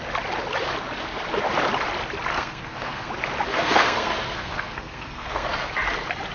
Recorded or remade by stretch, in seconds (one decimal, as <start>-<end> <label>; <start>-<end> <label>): 0.0-2.3 recorded; 2.3-3.1 remade; 3.1-3.5 recorded; 3.5-5.7 remade; 5.7-6.3 recorded